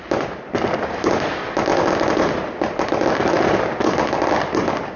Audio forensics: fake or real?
real